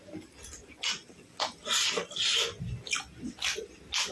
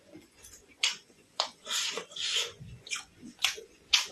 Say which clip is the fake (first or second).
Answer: second